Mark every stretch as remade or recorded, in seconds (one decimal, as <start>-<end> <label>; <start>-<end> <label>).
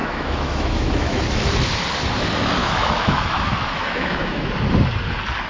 0.0-1.2 remade; 1.2-2.6 recorded; 2.6-4.5 remade; 4.5-5.5 recorded